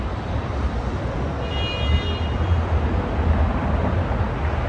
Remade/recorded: recorded